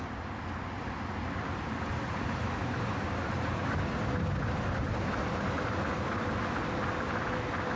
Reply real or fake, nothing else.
real